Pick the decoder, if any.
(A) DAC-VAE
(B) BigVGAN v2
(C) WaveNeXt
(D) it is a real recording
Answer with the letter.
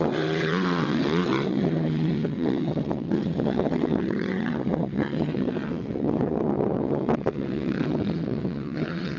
C